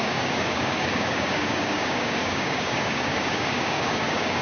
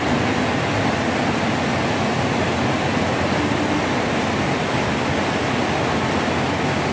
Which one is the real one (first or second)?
second